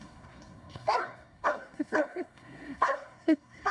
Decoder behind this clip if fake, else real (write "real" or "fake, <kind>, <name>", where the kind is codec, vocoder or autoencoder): fake, codec, SNAC